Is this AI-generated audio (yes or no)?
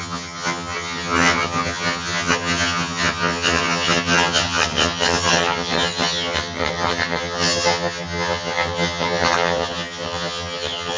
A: yes